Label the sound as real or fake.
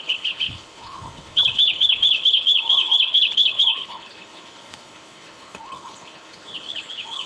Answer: fake